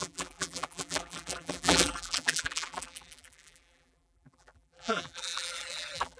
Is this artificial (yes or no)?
yes